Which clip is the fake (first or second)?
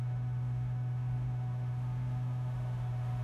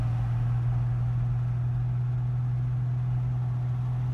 first